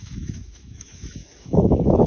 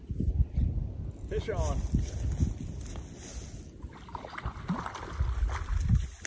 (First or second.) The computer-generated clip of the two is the first